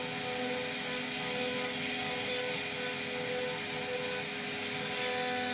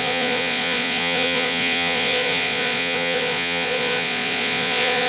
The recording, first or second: first